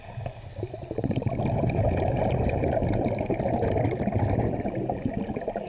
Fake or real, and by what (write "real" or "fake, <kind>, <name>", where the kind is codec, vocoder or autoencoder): real